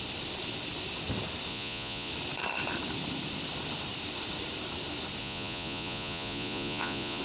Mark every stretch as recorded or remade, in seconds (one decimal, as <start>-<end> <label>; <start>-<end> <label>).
0.0-1.5 recorded; 1.5-2.1 remade; 2.1-5.2 recorded; 5.2-7.2 remade